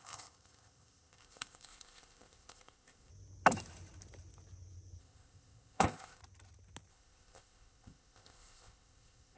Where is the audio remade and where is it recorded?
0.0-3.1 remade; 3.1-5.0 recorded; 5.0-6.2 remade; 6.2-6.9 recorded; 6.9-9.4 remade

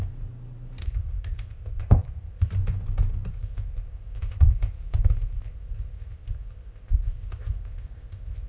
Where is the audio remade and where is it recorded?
0.0-0.8 recorded; 0.8-2.5 remade; 2.5-3.3 recorded; 3.3-8.5 remade